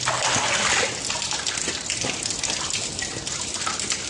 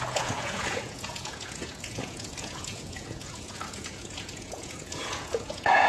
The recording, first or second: first